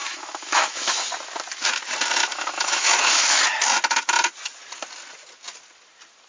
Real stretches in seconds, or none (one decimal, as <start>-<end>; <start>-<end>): 1.1-2.3; 3.4-6.3